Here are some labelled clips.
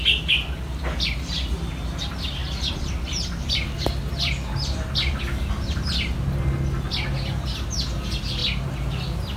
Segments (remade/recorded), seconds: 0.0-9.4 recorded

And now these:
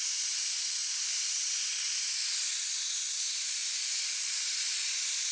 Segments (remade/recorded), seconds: 0.0-5.3 recorded

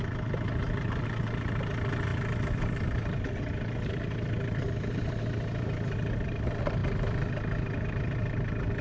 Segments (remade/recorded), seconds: 0.0-8.8 recorded

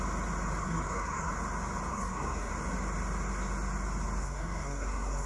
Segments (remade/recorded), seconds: 0.0-0.6 recorded; 0.6-1.3 remade; 1.3-1.9 recorded; 1.9-2.5 remade; 2.5-4.2 recorded; 4.2-5.3 remade

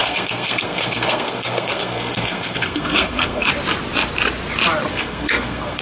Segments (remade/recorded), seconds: 0.0-3.5 remade; 3.5-4.9 recorded; 4.9-5.8 remade

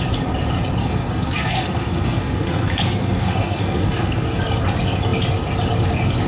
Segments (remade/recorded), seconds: 0.0-0.8 recorded; 0.8-4.4 remade; 4.4-6.3 recorded